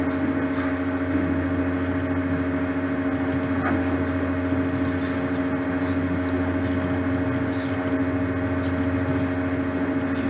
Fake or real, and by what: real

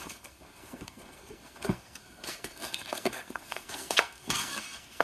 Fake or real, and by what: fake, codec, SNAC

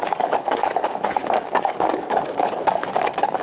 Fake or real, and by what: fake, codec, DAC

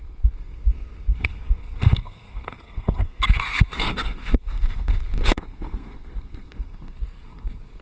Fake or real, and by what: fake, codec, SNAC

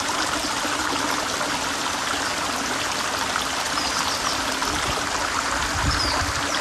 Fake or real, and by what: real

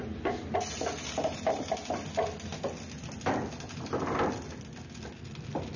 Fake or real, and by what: real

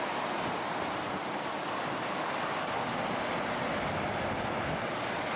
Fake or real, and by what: real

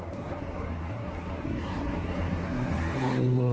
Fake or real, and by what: fake, codec, SNAC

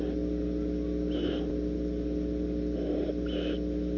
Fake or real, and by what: real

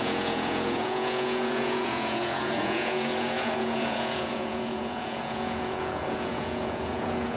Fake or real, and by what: fake, vocoder, Vocos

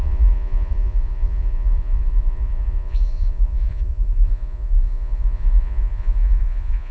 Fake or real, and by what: fake, vocoder, Vocos